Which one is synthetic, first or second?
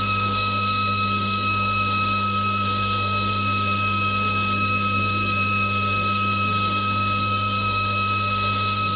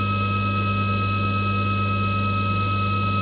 first